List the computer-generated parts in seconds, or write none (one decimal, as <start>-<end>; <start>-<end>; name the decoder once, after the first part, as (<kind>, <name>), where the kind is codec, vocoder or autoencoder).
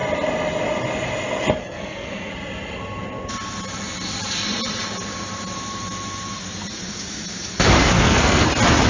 1.6-2.3 (codec, SNAC); 7.8-8.5